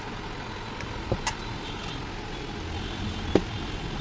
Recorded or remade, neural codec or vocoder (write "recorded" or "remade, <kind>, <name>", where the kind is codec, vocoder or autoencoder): recorded